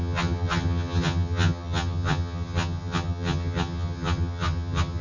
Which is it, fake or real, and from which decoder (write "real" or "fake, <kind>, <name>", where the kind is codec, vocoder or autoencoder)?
fake, vocoder, HiFi-GAN